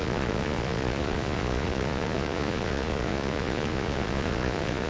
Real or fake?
fake